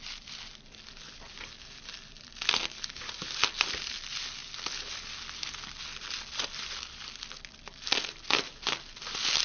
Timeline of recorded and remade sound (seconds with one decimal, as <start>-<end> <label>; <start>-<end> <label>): 0.0-9.4 recorded